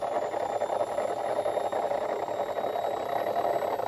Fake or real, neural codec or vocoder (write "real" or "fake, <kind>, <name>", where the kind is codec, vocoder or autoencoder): real